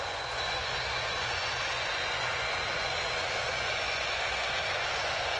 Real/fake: fake